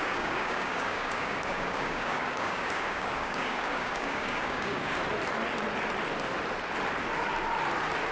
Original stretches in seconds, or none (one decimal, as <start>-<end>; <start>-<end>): 5.0-8.1